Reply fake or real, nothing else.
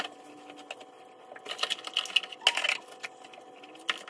real